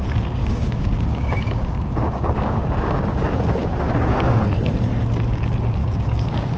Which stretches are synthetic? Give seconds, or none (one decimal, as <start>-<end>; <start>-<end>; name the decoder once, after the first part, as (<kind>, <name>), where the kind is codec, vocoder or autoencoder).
0.4-4.4 (codec, DAC); 5.8-6.6